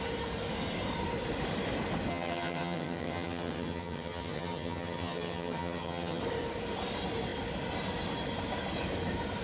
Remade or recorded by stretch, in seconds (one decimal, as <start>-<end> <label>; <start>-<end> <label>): 0.0-2.1 recorded; 2.1-6.2 remade; 6.2-9.4 recorded